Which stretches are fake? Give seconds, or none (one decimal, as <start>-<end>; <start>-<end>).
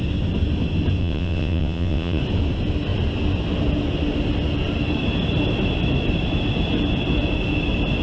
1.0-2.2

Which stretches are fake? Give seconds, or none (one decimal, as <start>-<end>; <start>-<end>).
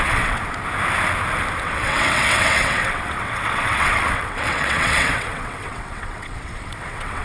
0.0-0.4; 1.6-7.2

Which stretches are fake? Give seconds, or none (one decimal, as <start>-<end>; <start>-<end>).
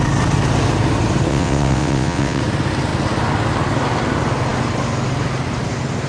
1.3-2.4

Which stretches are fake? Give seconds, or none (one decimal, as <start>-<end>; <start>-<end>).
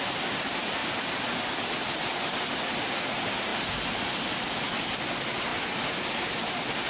none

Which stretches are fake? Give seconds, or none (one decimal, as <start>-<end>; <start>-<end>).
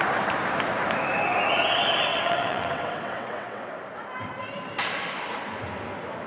2.1-3.7